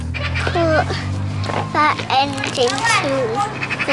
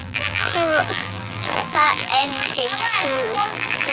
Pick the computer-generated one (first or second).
second